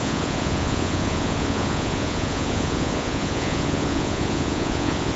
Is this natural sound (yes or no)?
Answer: no